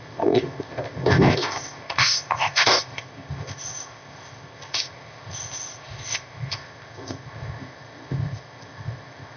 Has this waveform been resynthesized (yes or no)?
yes